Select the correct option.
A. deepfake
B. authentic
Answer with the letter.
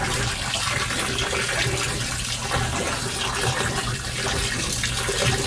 B